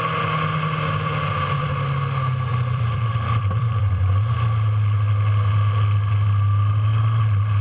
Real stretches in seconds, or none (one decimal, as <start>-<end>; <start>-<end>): 0.0-2.5; 4.1-7.6